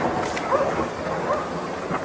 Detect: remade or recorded recorded